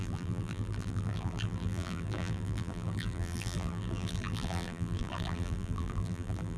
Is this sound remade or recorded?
remade